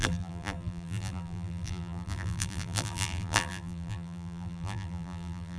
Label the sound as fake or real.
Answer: fake